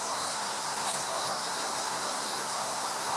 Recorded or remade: remade